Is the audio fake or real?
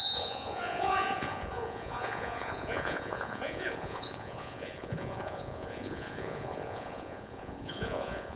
fake